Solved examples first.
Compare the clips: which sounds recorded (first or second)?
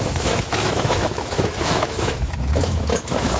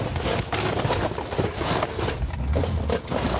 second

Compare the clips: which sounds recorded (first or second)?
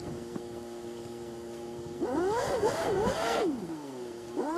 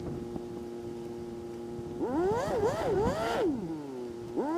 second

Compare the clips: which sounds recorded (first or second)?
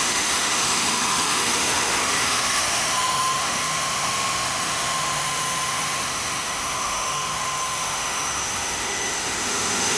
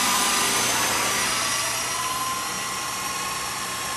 second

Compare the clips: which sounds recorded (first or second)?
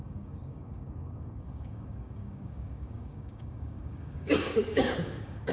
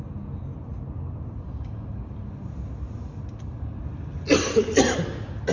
second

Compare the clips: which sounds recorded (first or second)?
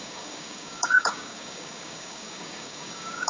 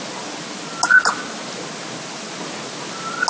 second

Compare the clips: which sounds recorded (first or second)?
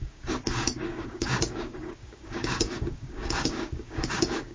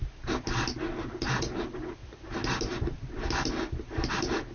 second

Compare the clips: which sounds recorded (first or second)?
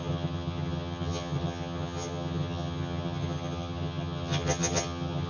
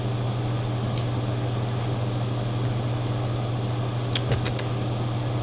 second